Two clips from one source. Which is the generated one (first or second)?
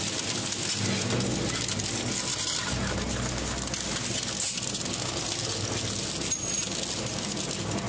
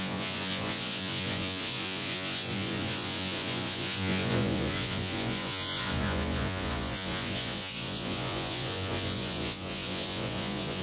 second